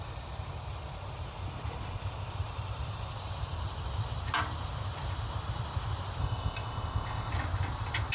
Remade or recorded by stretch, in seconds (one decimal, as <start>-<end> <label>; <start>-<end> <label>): 0.0-6.2 recorded; 6.2-7.3 remade; 7.3-8.1 recorded